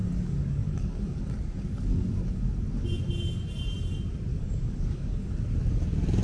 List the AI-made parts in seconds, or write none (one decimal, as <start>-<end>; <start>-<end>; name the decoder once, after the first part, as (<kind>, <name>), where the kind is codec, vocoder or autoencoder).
0.0-2.5 (codec, DAC); 4.3-5.3